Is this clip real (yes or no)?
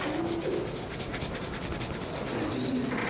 yes